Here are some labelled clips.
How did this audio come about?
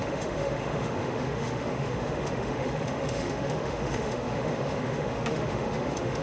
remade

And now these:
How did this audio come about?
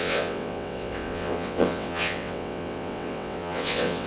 remade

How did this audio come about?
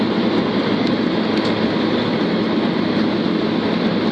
recorded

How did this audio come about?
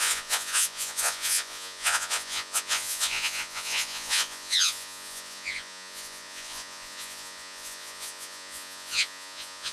remade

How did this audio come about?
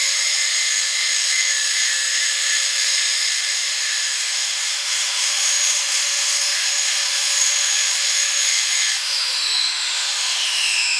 remade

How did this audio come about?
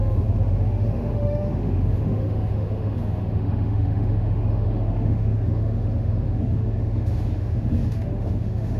remade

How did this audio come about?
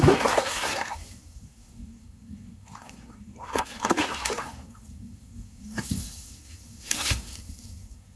remade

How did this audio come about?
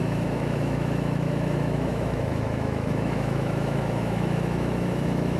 remade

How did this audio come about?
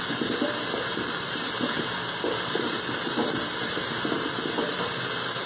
recorded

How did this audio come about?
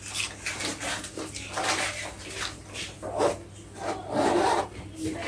recorded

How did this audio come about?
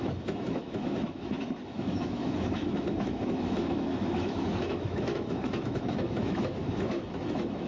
remade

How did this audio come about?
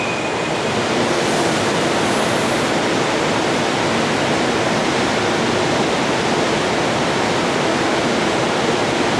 recorded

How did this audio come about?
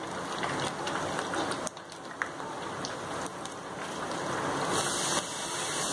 recorded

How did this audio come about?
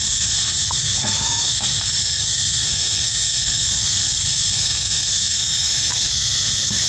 remade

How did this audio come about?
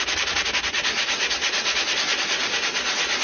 recorded